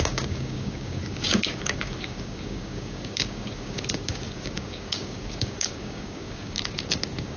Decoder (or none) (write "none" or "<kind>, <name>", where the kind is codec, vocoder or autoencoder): codec, DAC